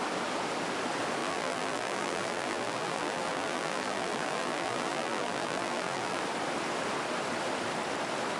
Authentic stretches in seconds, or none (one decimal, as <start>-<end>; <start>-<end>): 0.0-1.2; 6.2-8.4